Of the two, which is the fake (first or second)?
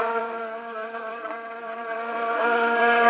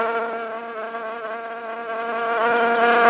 first